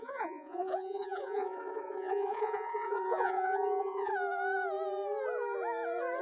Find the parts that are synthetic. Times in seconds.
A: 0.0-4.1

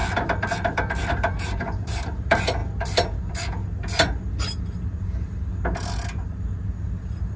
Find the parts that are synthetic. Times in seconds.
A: 1.3-2.6; 4.6-5.5; 7.0-7.4

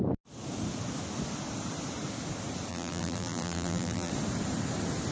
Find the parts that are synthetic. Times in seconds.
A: 2.7-4.1

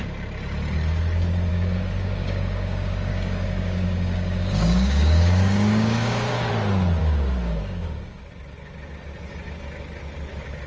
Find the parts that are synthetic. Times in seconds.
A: 1.5-6.5; 7.0-8.3

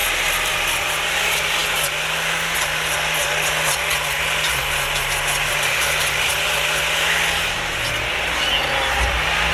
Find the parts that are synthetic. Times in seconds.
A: none

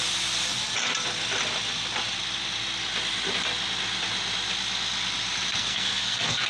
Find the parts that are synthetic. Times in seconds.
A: 5.6-6.5

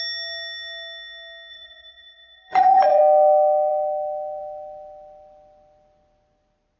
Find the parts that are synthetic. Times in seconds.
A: 1.5-3.0

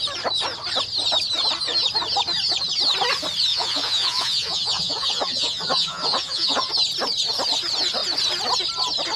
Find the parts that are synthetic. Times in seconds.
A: 3.5-6.7